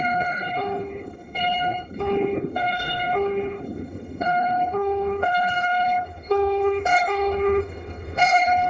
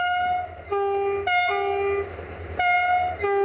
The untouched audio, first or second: second